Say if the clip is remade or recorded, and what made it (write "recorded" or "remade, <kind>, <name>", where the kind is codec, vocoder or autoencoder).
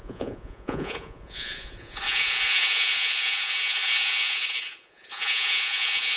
remade, vocoder, Vocos